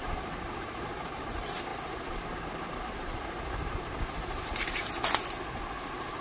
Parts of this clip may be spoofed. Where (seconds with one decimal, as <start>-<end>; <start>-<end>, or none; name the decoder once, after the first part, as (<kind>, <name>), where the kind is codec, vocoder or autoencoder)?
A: 0.0-6.2 (vocoder, BigVGAN v2)